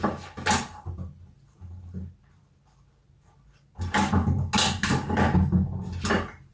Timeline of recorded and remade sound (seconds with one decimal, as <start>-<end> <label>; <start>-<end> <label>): 0.0-6.5 recorded